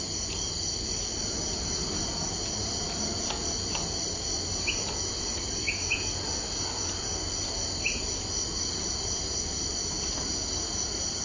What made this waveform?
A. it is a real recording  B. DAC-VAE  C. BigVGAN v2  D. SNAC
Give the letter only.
A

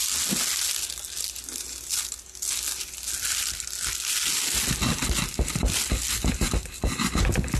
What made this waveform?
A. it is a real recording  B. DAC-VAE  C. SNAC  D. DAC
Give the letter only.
A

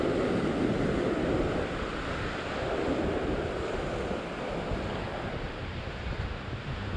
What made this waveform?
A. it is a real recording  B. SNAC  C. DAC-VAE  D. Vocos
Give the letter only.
A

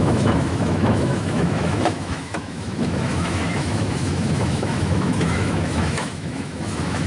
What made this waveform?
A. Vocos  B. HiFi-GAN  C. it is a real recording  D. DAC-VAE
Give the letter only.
D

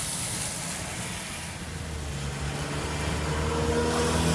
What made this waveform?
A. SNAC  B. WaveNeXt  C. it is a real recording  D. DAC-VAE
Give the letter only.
C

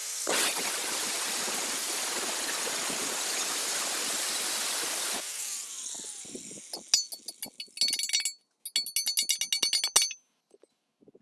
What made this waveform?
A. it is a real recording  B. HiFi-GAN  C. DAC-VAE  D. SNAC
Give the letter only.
A